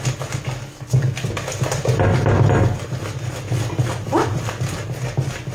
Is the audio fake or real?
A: real